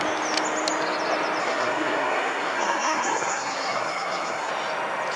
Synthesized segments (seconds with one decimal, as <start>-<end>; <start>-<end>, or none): 1.4-4.5